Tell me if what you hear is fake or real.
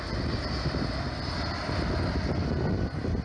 real